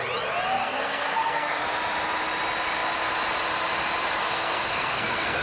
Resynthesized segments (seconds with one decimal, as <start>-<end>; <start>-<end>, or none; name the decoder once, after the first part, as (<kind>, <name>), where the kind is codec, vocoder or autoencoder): 0.6-1.6 (codec, SNAC); 4.2-5.4